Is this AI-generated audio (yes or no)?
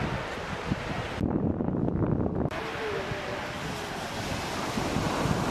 no